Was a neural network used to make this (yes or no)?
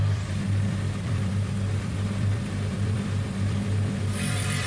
yes